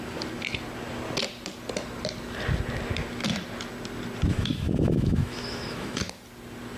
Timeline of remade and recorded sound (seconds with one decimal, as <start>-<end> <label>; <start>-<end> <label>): 0.0-4.3 recorded; 4.3-6.0 remade; 6.0-6.8 recorded